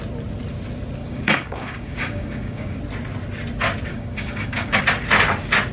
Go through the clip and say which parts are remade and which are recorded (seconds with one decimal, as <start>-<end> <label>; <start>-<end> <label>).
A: 0.0-1.0 recorded; 1.0-2.8 remade; 2.8-3.9 recorded; 3.9-4.8 remade; 4.8-5.7 recorded